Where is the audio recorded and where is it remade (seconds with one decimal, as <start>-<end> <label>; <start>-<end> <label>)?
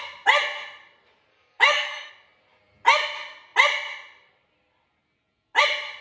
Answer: 0.0-1.3 recorded; 1.3-2.1 remade; 2.1-6.0 recorded